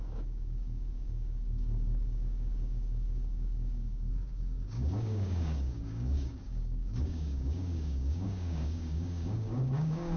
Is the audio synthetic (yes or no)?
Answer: yes